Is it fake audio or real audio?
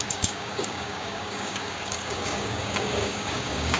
fake